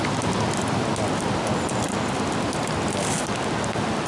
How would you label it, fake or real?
real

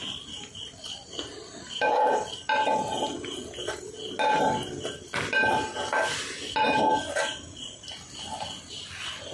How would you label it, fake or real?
real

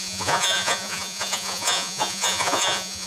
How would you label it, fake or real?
fake